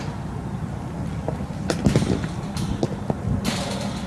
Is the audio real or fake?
real